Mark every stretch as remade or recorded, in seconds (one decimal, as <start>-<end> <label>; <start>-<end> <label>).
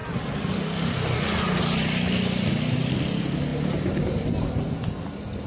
0.0-3.5 recorded; 3.5-4.2 remade; 4.2-5.5 recorded